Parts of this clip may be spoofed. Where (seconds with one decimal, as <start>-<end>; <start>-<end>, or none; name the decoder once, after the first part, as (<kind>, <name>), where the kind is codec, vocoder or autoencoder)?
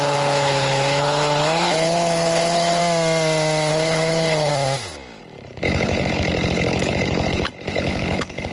0.0-2.8 (codec, HILCodec); 3.7-4.5; 5.2-8.5